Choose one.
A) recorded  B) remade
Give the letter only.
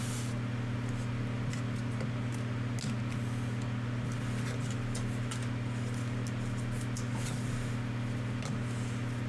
A